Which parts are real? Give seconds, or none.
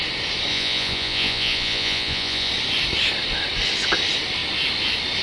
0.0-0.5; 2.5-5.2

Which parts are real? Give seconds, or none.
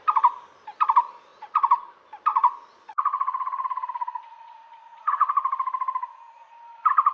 0.0-1.3; 1.9-2.3; 5.3-7.1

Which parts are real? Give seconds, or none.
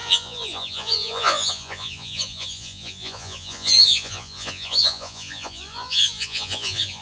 none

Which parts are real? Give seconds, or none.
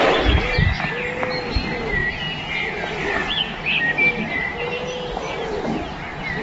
0.0-2.0; 2.8-3.2; 3.8-6.4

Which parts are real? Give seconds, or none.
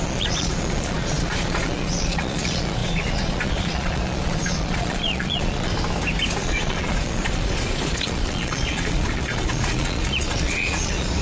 5.7-6.4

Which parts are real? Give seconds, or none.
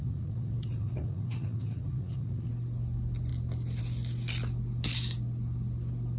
2.5-6.2